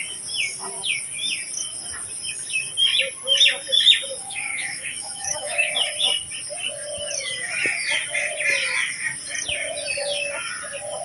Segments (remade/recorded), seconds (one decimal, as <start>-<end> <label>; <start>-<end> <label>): 0.0-4.2 recorded; 4.2-5.7 remade; 5.7-11.0 recorded